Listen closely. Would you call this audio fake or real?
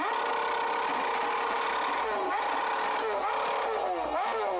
real